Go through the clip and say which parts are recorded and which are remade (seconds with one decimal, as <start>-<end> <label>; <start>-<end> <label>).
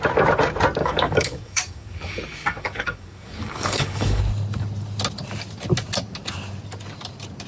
0.0-0.8 recorded; 0.8-4.2 remade; 4.2-7.5 recorded